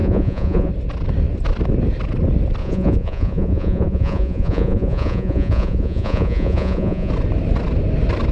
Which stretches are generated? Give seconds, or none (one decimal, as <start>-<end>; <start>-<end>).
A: 0.0-0.7; 2.6-7.1